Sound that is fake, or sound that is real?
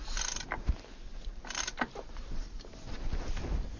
real